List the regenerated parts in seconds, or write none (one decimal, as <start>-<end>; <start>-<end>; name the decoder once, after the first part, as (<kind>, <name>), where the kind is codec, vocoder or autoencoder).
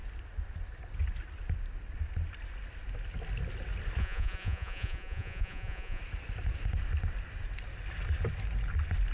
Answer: 4.0-6.0 (vocoder, Vocos)